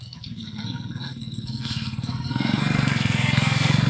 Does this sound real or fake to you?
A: fake